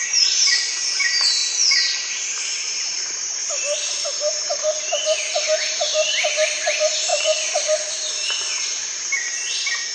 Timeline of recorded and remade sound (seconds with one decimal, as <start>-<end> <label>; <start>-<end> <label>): 0.0-1.4 remade; 1.4-2.4 recorded; 2.4-9.9 remade